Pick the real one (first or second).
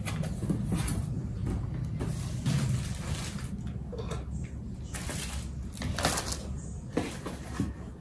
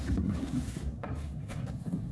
first